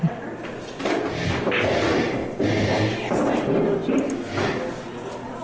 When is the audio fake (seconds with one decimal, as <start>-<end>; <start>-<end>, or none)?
none